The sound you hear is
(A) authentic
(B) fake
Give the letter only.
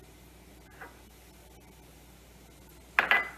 A